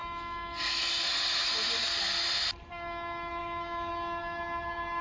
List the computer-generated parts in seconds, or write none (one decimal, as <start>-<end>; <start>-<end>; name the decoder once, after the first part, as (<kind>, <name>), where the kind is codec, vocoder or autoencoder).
3.4-3.9 (codec, DAC)